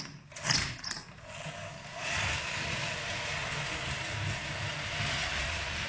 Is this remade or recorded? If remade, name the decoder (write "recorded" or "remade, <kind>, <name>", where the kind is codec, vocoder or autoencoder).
recorded